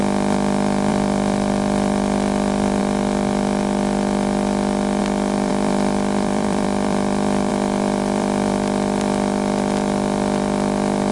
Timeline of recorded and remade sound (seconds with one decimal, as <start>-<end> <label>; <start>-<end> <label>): 0.0-2.8 remade; 2.8-5.0 recorded; 5.0-11.1 remade